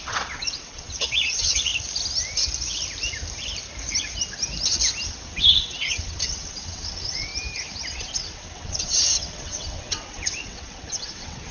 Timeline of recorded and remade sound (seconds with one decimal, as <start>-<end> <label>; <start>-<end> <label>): 0.0-1.7 remade; 1.7-5.1 recorded; 5.1-7.3 remade; 7.3-7.9 recorded; 7.9-11.5 remade